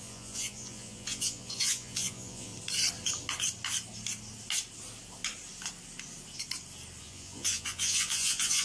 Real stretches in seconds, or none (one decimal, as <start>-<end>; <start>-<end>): 2.5-7.0